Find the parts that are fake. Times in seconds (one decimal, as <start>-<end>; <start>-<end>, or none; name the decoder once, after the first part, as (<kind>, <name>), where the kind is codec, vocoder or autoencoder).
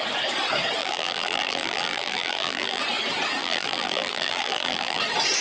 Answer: 0.8-2.8 (vocoder, BigVGAN v2); 3.4-5.0